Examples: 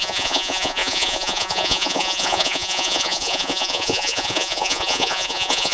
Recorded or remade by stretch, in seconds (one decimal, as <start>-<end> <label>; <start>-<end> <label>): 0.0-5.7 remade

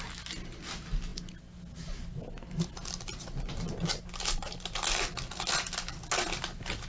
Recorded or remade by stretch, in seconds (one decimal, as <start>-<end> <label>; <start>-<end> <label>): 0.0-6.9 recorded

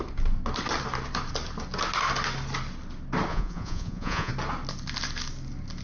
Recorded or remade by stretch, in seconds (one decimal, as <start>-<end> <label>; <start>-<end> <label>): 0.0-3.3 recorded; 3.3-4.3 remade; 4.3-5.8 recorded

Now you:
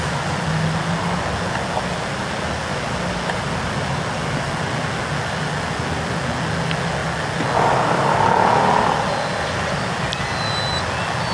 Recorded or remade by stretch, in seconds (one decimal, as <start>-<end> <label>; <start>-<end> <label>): 0.0-11.3 recorded

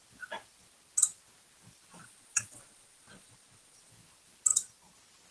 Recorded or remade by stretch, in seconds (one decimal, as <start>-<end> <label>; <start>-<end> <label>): 0.0-1.9 recorded; 1.9-3.9 remade; 3.9-5.3 recorded

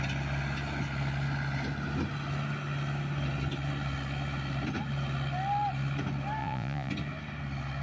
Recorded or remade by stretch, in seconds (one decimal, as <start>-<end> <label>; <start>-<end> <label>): 0.0-6.4 recorded; 6.4-6.9 remade; 6.9-7.8 recorded

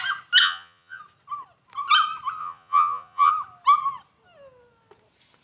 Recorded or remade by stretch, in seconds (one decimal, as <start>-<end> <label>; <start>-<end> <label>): 0.0-0.4 recorded; 0.4-1.0 remade; 1.0-2.4 recorded; 2.4-3.3 remade; 3.3-5.4 recorded